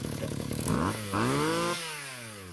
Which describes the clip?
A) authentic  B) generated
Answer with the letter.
B